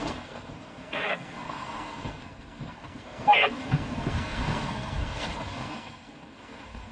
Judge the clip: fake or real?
fake